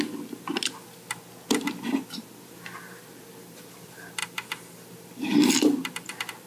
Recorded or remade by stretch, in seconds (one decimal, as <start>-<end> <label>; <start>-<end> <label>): 0.0-0.5 remade; 0.5-1.6 recorded; 1.6-6.5 remade